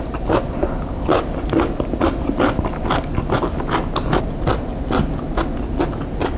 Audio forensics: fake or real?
real